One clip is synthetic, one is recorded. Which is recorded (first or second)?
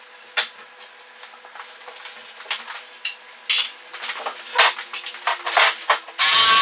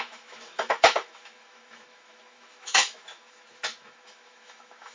first